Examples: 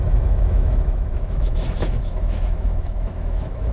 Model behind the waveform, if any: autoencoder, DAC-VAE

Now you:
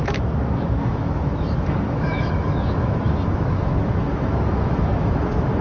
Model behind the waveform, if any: autoencoder, DAC-VAE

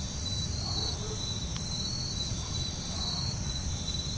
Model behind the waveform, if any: none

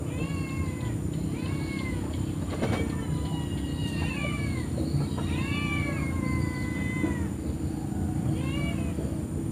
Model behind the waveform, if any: none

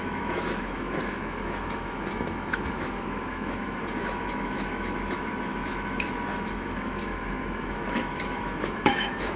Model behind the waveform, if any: autoencoder, DAC-VAE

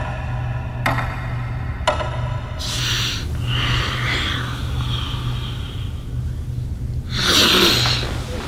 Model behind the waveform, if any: none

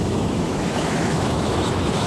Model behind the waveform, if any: autoencoder, DAC-VAE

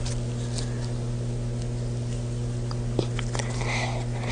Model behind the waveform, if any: none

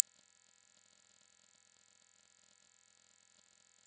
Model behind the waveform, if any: none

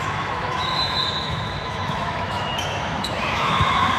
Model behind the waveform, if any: autoencoder, DAC-VAE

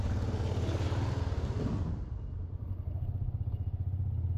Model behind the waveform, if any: none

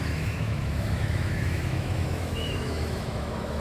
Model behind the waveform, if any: autoencoder, DAC-VAE